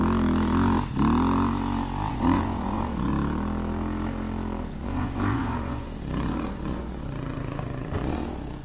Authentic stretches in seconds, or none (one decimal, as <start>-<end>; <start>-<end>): 0.0-2.1; 3.1-4.7

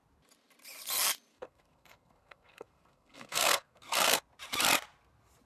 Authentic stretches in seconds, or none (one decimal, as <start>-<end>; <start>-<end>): 0.0-1.3; 4.2-5.5

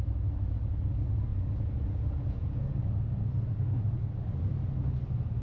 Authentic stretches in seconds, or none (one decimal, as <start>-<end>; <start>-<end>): 0.0-1.3; 2.7-5.4

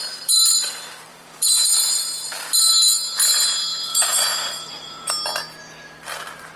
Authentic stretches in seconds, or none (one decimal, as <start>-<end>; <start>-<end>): 0.0-1.1; 2.3-3.7; 5.1-6.6

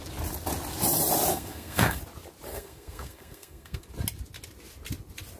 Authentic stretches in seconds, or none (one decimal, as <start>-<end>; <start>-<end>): 0.0-1.3; 2.0-2.5; 3.9-5.4

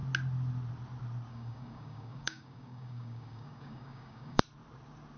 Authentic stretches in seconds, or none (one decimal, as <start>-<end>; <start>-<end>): 0.0-1.3; 4.4-5.2